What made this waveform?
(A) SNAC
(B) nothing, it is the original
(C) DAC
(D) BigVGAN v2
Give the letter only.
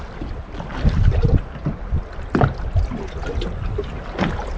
B